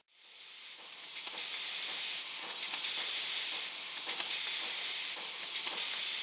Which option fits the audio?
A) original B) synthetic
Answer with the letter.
A